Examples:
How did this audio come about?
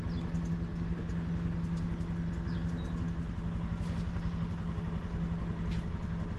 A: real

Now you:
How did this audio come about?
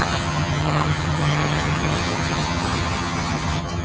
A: fake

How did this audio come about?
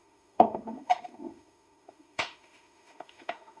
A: fake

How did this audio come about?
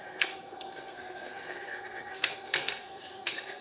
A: fake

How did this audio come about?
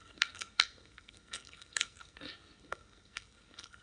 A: fake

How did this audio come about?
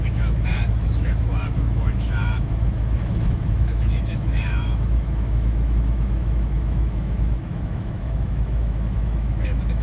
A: fake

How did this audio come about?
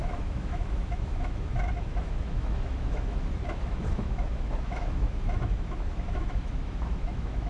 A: fake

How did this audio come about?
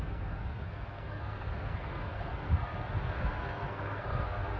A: fake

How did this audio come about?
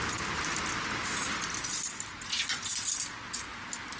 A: real